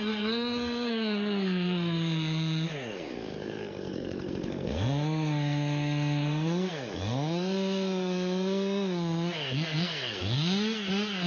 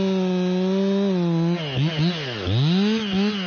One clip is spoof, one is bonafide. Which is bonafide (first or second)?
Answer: second